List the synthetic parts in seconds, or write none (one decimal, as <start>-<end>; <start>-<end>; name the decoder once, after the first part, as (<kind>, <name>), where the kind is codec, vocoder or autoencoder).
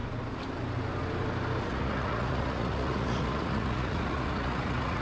1.7-5.0 (vocoder, Vocos)